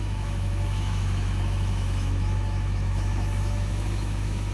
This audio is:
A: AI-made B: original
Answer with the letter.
A